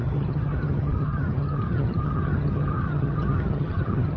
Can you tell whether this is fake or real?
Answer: fake